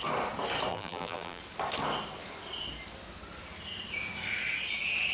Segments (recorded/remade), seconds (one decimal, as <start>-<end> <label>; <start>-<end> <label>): 0.0-0.7 recorded; 0.7-1.4 remade; 1.4-5.1 recorded